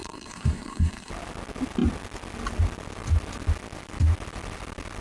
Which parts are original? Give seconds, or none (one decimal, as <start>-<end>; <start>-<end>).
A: 1.1-5.0